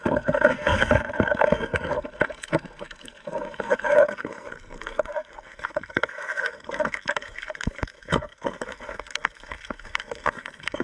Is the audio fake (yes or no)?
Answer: yes